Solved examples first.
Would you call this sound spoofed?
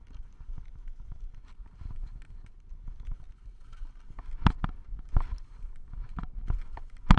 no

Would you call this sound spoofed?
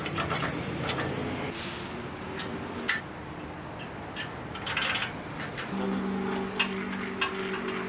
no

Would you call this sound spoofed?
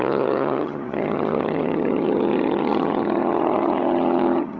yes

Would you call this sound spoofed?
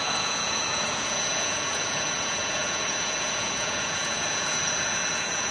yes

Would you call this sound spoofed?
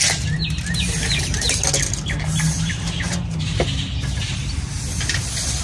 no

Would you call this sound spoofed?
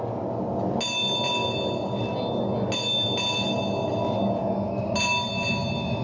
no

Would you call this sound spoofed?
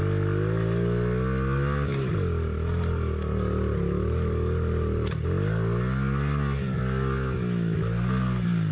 no